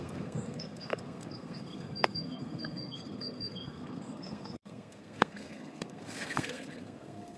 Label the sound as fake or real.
fake